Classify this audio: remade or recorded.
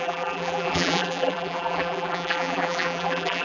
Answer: remade